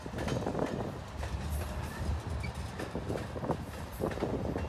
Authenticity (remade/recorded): recorded